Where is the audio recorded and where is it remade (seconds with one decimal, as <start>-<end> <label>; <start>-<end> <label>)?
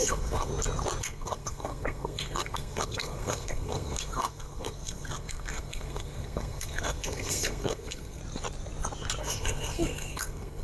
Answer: 0.0-0.5 remade; 0.5-1.0 recorded; 1.0-8.2 remade; 8.2-9.2 recorded; 9.2-10.6 remade